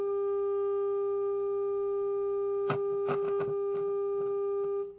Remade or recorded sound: recorded